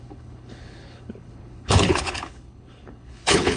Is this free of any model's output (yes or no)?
no